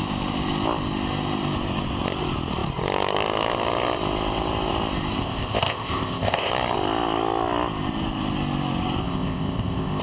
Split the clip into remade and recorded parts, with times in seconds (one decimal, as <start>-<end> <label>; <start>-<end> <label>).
0.0-5.2 recorded; 5.2-6.5 remade; 6.5-9.0 recorded; 9.0-10.0 remade